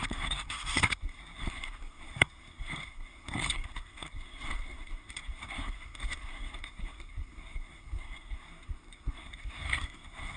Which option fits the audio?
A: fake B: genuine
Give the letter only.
A